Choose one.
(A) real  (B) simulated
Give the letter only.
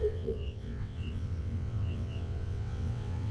B